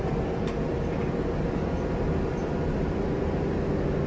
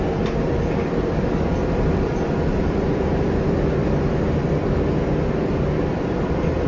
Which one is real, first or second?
first